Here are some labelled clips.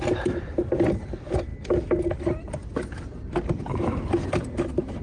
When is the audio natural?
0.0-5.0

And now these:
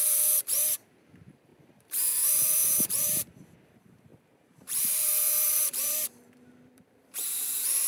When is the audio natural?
none

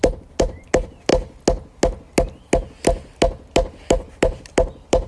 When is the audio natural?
1.1-4.2

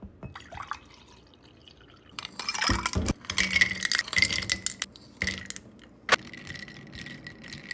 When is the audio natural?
0.0-1.6; 2.3-7.7